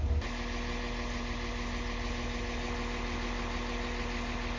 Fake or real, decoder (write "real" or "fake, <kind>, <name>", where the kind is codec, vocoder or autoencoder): real